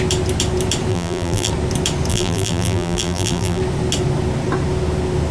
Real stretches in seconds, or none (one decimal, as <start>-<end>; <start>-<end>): 0.0-0.9; 1.5-2.1; 3.6-5.3